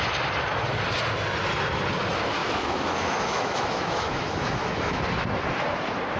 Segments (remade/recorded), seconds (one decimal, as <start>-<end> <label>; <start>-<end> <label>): 0.0-2.4 recorded; 2.4-5.0 remade; 5.0-6.2 recorded